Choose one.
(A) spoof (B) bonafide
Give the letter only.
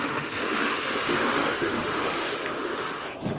A